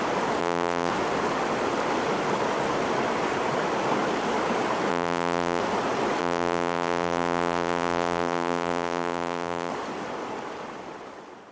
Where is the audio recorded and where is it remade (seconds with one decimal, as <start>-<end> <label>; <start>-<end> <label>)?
0.0-0.4 recorded; 0.4-0.9 remade; 0.9-4.9 recorded; 4.9-5.6 remade; 5.6-6.2 recorded; 6.2-9.7 remade; 9.7-11.5 recorded